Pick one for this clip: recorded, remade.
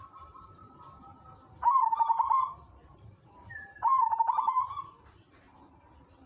remade